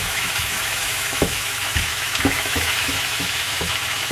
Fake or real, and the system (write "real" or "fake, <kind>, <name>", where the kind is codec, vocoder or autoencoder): fake, autoencoder, DAC-VAE